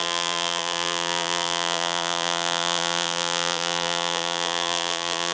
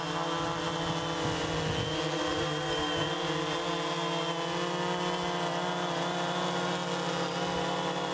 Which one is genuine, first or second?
second